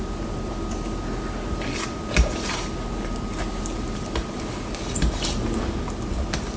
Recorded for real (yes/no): yes